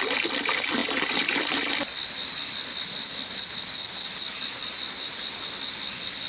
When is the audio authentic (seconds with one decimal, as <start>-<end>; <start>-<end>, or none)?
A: 0.0-0.8; 2.5-3.8; 4.7-6.3